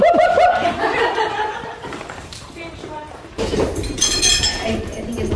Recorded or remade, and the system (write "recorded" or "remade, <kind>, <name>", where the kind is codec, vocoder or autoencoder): remade, vocoder, BigVGAN v2